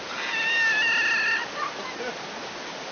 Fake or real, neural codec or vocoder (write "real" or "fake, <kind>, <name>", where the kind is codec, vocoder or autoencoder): real